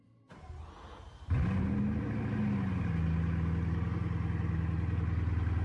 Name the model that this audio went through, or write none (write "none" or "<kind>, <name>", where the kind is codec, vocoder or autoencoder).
none